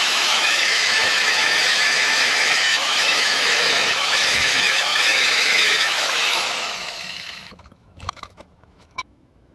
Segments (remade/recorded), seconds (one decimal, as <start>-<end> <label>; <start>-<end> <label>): 0.0-9.5 remade